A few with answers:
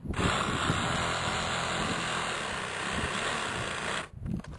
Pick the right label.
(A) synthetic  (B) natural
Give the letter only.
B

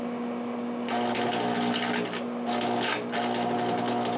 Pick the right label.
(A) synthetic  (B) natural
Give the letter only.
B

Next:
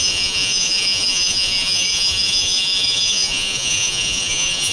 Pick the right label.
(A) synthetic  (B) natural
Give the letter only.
A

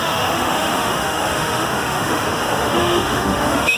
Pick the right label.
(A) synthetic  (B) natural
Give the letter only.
A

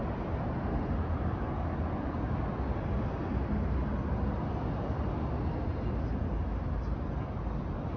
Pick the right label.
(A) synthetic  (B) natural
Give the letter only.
B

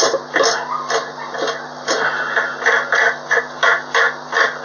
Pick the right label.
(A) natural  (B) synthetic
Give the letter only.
A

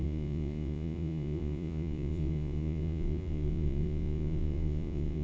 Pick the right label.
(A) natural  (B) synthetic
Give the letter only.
B